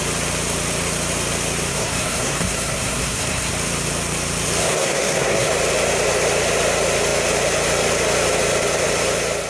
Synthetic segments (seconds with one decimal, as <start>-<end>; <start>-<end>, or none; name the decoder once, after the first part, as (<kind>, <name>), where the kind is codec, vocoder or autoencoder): 1.7-3.5 (codec, SNAC); 4.6-5.5